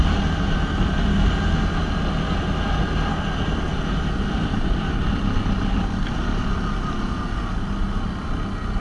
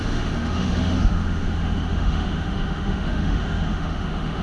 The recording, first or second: first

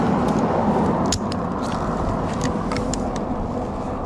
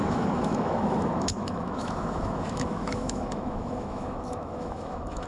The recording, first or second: first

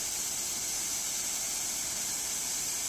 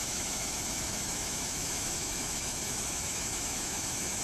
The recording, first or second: first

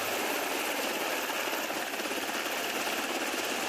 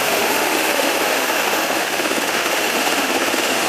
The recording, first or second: first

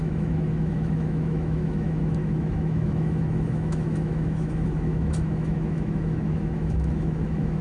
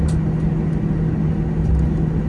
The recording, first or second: second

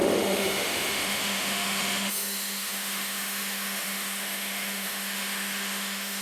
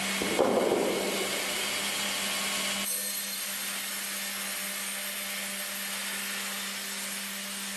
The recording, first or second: second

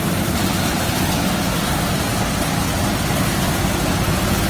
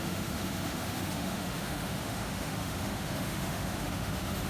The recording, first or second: first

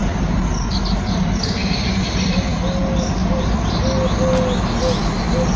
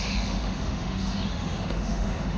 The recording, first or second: first